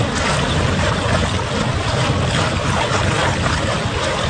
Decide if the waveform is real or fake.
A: real